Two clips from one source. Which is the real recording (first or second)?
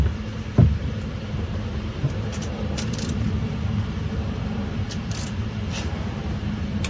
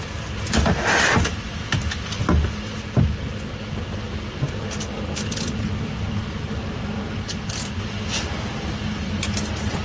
second